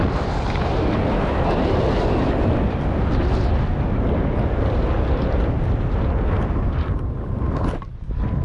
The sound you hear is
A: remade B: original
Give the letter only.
B